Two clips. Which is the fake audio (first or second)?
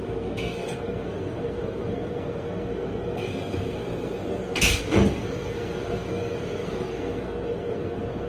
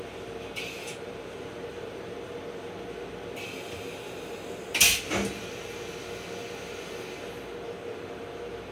first